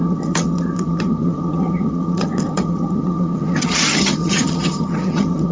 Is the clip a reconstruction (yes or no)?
yes